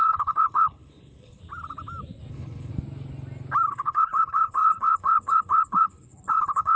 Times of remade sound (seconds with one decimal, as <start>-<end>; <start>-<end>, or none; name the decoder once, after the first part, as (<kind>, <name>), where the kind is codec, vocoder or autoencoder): 0.0-1.4 (codec, HILCodec); 2.3-2.7; 3.7-6.8